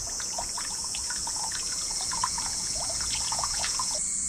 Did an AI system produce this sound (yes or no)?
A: yes